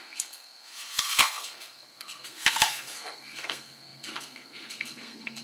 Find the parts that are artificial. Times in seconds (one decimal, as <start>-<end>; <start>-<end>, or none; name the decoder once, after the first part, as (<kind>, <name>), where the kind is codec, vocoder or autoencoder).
0.0-5.4 (codec, SNAC)